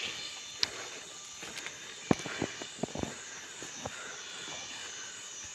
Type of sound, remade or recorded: recorded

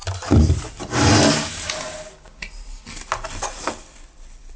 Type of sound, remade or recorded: recorded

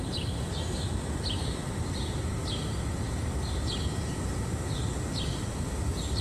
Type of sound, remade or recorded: remade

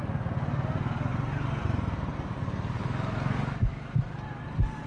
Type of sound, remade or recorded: recorded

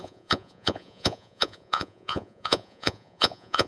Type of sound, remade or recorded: remade